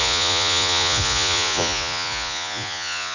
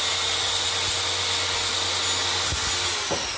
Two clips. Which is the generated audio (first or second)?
first